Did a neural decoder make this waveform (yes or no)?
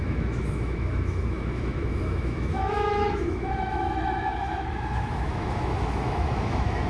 yes